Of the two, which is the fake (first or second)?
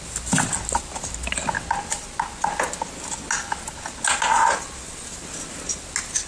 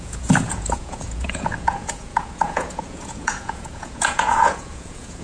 second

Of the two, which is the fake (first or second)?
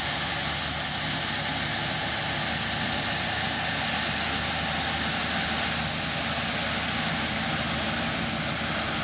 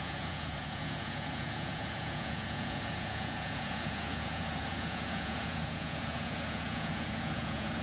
second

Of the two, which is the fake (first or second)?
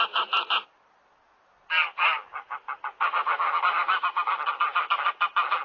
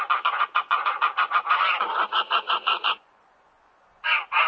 second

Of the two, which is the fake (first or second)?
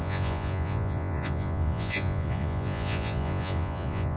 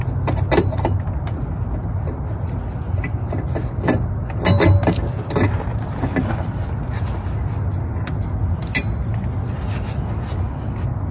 first